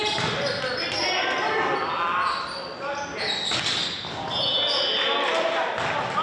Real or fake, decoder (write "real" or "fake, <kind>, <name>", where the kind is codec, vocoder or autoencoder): real